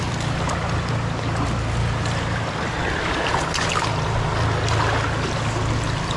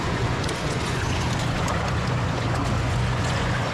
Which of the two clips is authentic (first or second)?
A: first